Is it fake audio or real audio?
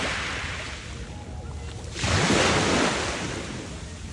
real